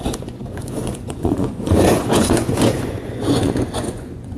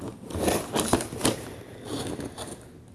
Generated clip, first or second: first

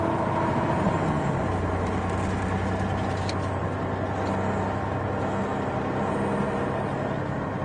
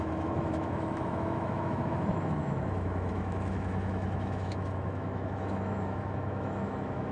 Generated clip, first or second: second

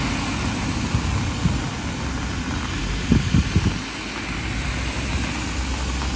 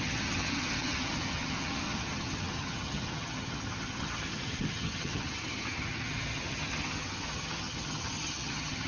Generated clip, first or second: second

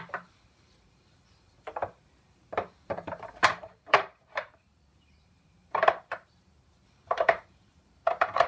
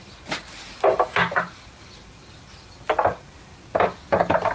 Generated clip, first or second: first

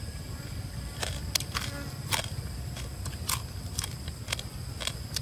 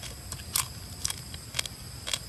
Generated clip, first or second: first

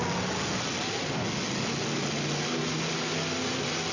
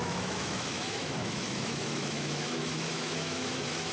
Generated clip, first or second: second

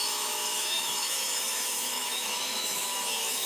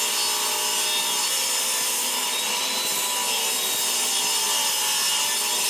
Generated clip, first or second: first